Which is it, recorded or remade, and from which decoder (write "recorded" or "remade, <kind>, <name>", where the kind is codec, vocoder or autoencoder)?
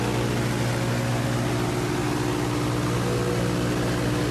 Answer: recorded